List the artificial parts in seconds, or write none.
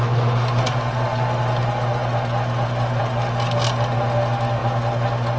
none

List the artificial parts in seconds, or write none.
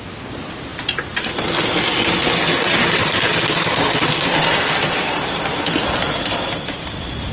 none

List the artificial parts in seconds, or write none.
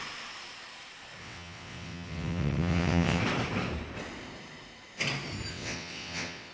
1.2-3.2 (vocoder, WaveNeXt); 5.5-6.5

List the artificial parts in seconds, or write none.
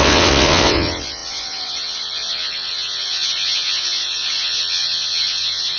0.0-5.8 (vocoder, WaveNeXt)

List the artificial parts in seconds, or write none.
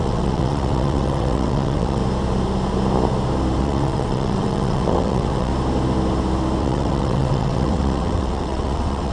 0.0-2.0 (vocoder, WaveNeXt); 3.6-5.5; 6.6-9.1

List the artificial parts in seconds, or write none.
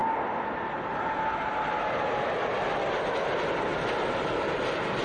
none